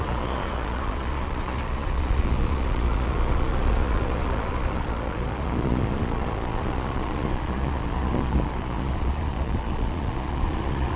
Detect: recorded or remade remade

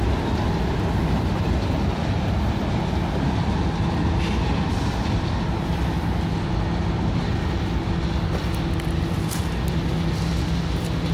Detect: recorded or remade recorded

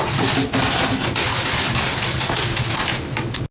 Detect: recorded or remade recorded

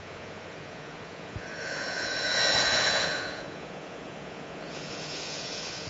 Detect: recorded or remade remade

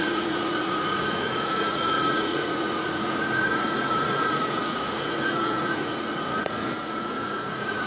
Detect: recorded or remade remade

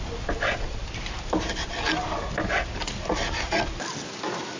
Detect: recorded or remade recorded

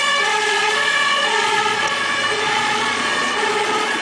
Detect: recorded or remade remade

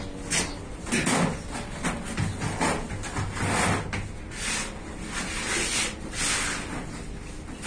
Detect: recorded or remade recorded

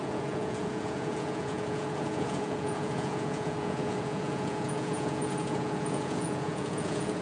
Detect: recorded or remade remade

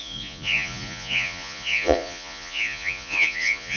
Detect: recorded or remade remade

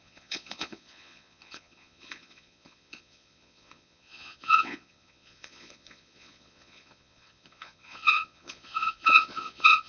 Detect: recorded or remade remade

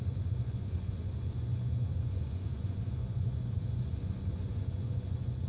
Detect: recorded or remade remade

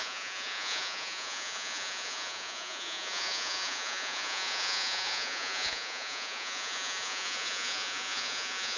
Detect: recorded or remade remade